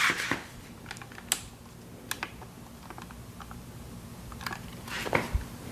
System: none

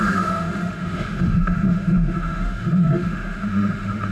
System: autoencoder, DAC-VAE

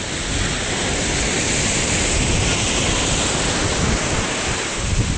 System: none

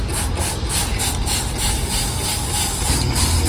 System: none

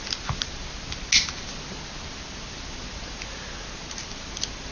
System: none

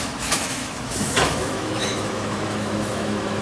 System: autoencoder, DAC-VAE